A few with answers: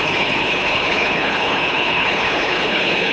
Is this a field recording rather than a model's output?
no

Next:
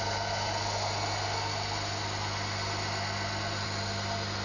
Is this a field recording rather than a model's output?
yes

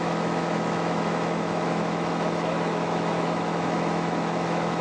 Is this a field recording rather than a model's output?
no